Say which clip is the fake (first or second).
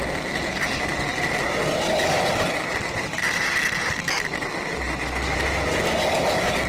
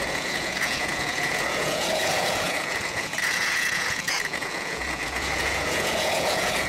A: second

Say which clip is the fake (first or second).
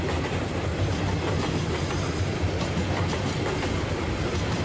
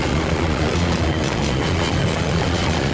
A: second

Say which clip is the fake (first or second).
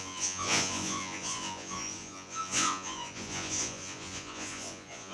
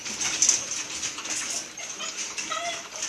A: first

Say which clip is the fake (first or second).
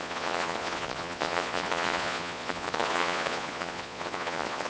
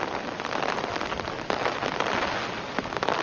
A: first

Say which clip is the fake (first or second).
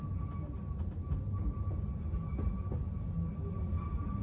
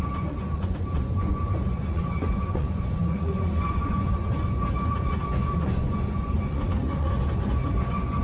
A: second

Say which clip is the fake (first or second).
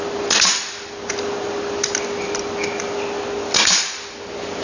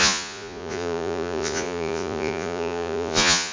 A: second